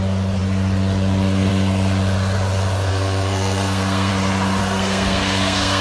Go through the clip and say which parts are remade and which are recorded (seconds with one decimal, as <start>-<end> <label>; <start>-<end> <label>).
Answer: 0.0-2.9 recorded; 2.9-4.1 remade; 4.1-4.6 recorded; 4.6-5.8 remade